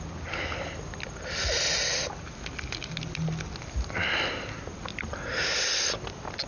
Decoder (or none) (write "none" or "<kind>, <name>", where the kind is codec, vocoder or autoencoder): none